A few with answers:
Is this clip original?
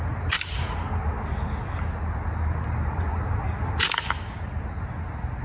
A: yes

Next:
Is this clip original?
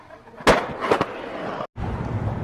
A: yes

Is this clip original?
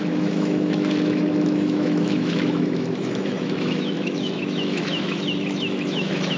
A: no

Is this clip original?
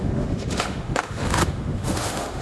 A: no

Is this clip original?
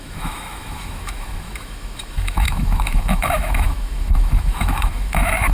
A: no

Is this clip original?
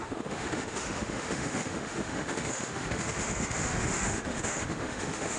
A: no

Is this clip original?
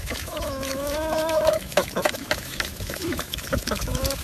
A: no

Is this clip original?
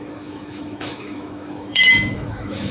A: no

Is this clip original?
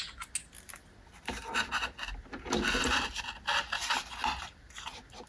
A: yes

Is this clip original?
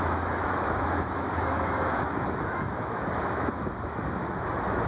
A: no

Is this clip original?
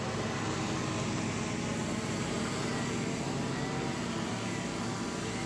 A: yes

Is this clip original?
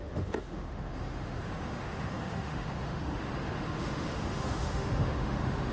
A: no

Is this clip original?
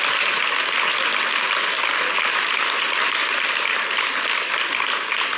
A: yes